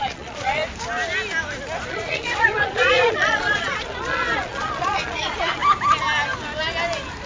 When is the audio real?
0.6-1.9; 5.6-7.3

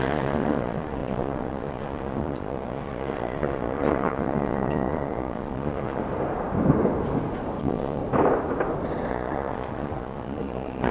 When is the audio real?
6.0-7.6; 8.0-9.1

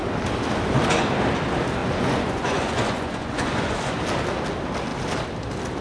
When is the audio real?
0.0-1.8; 4.0-5.8

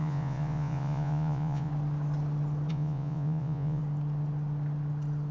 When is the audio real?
1.7-2.7; 3.8-5.3

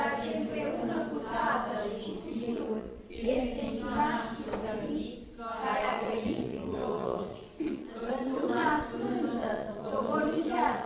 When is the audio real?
0.0-2.1; 3.7-5.8; 8.7-9.4